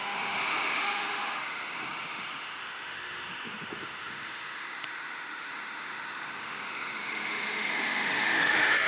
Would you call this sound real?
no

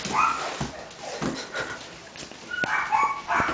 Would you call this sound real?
yes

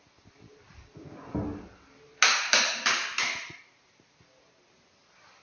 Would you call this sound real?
yes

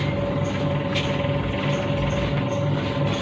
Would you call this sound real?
no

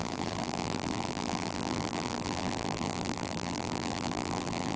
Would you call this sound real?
no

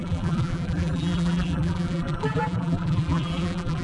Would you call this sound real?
no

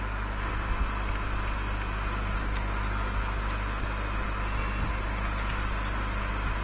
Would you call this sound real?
yes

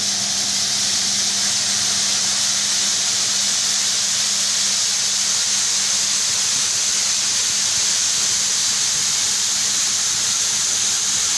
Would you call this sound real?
yes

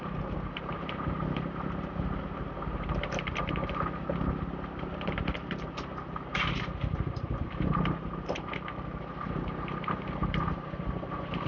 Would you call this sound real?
no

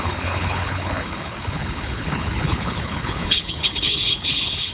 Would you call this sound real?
no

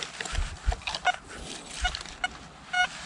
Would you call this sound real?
yes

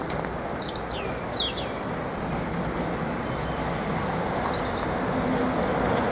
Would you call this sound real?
yes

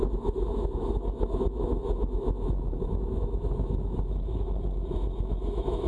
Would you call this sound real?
no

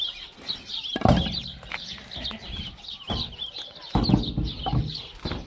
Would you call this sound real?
yes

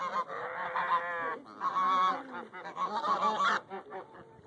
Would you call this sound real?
yes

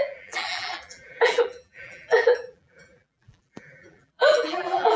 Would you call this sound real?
no